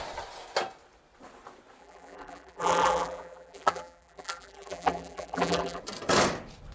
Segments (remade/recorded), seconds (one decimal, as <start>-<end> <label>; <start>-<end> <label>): 0.0-1.8 recorded; 1.8-5.8 remade; 5.8-6.7 recorded